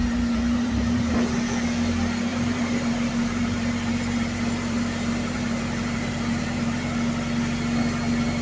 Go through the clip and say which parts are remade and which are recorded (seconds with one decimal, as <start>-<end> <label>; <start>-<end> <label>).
0.0-1.1 remade; 1.1-2.3 recorded; 2.3-6.9 remade; 6.9-8.4 recorded